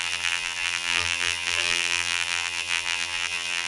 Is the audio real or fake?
fake